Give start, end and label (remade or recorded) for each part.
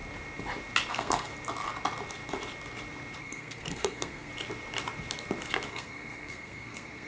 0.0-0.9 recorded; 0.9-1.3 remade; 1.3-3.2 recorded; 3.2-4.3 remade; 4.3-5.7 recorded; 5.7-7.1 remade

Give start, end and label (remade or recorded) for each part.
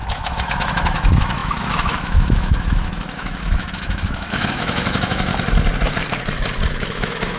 0.0-5.3 remade; 5.3-6.7 recorded; 6.7-7.4 remade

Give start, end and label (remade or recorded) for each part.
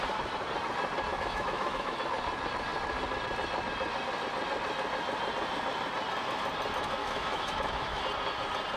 0.0-1.1 recorded; 1.1-2.0 remade; 2.0-7.0 recorded; 7.0-8.0 remade; 8.0-8.8 recorded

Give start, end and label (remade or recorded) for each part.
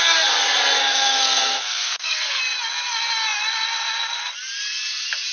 0.0-0.8 recorded; 0.8-2.4 remade; 2.4-5.3 recorded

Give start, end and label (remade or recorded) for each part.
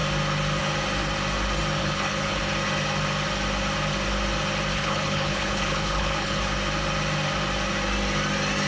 0.0-1.8 recorded; 1.8-2.4 remade; 2.4-4.7 recorded; 4.7-6.4 remade; 6.4-8.7 recorded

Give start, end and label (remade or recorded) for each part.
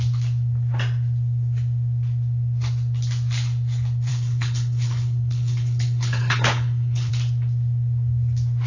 0.0-4.1 recorded; 4.1-7.1 remade; 7.1-8.7 recorded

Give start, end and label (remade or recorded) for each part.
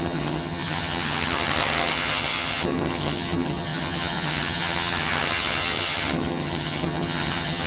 0.0-7.7 remade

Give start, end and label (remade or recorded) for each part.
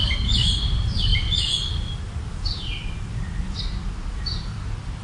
0.0-5.0 recorded